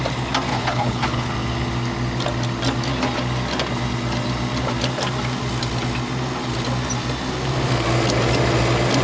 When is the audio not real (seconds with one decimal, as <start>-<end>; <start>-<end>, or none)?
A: 0.5-1.3